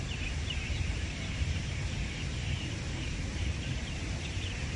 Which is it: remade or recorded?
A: remade